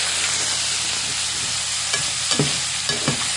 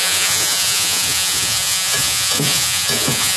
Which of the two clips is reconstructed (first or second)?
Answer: second